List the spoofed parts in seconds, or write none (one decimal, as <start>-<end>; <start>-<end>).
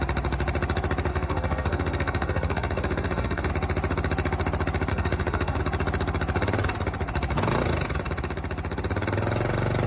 1.1-3.5; 4.9-5.6